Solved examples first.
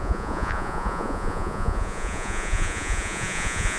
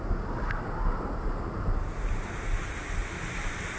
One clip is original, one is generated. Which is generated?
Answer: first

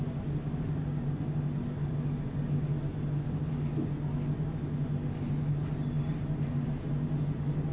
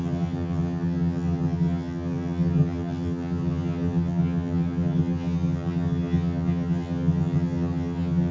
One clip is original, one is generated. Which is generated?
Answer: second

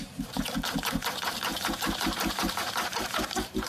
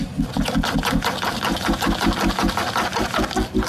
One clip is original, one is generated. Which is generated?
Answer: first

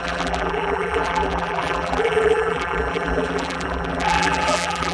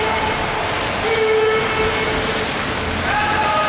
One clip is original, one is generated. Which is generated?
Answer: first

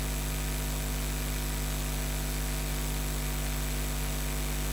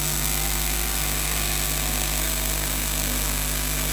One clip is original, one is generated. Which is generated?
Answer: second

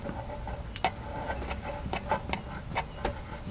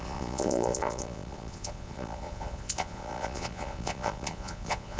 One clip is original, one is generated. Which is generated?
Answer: second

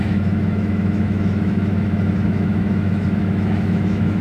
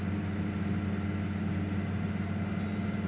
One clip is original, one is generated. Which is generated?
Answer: first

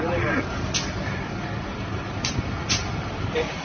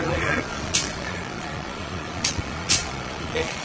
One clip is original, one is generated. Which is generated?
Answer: second